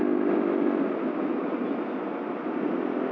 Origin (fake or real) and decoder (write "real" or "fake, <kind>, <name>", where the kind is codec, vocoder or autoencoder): real